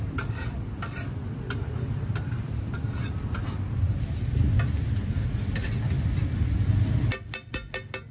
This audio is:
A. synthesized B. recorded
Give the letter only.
B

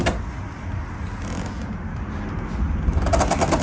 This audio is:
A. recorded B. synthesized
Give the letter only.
A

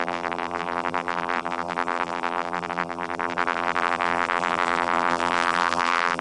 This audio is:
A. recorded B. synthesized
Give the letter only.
B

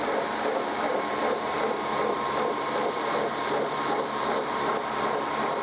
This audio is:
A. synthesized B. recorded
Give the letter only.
A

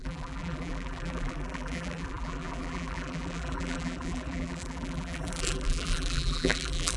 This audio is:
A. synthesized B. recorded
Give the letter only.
A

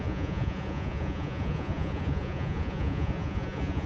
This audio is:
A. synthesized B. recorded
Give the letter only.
A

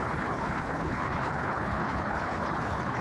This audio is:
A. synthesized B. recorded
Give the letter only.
A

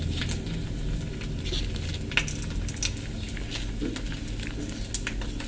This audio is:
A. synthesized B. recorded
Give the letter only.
B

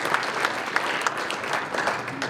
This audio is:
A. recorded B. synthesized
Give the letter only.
A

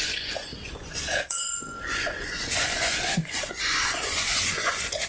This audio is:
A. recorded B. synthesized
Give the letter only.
B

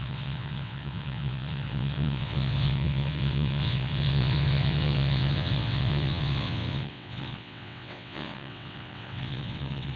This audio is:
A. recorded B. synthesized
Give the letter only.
B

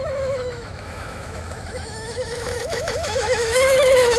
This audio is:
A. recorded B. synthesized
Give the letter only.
B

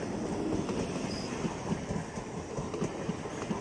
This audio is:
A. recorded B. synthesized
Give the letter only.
A